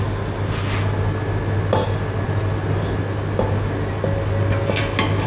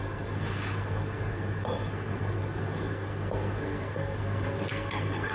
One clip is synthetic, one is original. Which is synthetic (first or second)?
second